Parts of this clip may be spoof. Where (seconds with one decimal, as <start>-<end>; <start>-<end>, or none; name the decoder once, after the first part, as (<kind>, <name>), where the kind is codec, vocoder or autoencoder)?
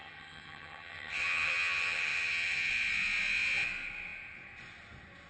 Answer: 0.0-2.7 (vocoder, HiFi-GAN)